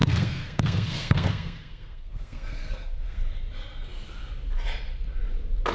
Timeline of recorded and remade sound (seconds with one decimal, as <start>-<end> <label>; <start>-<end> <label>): 0.0-3.4 remade; 3.4-5.7 recorded